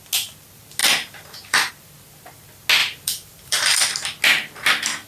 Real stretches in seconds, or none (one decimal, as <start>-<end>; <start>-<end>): 0.0-0.8; 1.7-2.8; 3.8-5.1